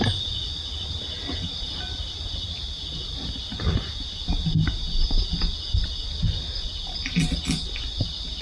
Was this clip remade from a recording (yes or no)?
no